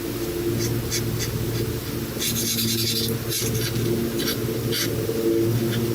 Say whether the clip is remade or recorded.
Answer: recorded